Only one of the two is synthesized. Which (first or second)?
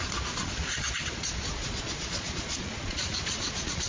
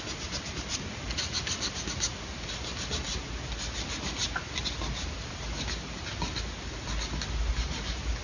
first